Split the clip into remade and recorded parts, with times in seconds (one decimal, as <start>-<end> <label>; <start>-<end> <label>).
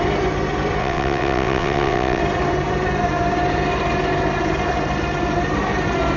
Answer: 0.0-0.8 recorded; 0.8-2.2 remade; 2.2-6.2 recorded